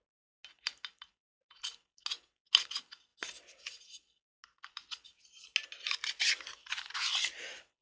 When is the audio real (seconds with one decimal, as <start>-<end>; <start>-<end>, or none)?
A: 0.0-7.8